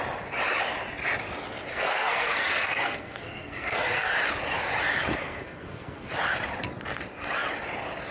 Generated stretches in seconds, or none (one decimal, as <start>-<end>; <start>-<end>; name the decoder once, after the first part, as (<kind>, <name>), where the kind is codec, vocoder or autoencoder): 1.7-4.1 (codec, SNAC); 5.2-6.1